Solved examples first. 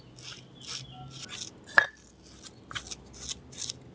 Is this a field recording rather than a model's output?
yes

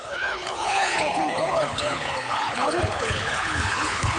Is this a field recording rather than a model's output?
no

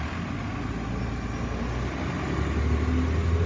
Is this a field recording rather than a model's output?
yes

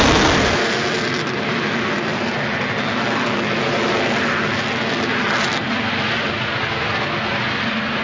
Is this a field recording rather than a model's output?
yes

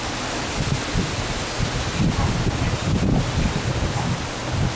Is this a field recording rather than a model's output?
yes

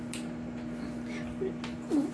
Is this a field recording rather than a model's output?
yes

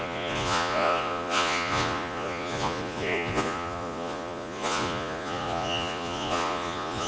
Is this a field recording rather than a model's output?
no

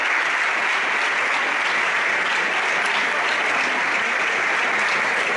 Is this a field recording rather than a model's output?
yes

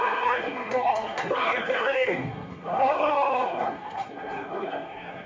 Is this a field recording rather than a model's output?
no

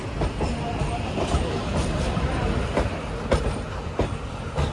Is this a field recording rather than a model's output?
yes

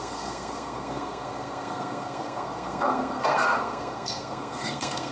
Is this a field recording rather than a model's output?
no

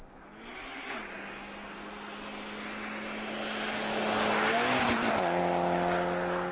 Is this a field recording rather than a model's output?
yes